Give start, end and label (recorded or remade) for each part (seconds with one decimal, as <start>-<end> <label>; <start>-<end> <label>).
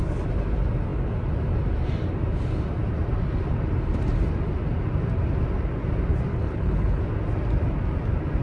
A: 0.0-6.3 recorded; 6.3-7.0 remade; 7.0-8.4 recorded